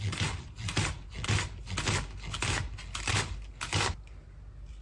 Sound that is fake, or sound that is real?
real